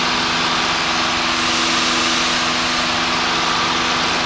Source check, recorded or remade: recorded